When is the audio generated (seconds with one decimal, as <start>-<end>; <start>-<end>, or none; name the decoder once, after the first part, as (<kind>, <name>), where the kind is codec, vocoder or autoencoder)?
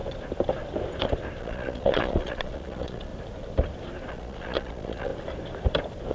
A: 1.4-3.1 (vocoder, Vocos); 4.1-5.1